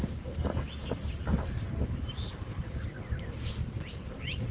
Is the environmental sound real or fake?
fake